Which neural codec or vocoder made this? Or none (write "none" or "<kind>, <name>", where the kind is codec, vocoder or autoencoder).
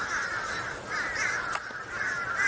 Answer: none